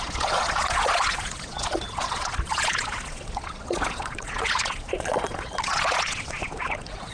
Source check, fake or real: fake